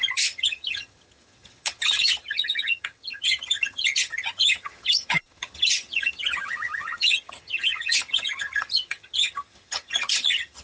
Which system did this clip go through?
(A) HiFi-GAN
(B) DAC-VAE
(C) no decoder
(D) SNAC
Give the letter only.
A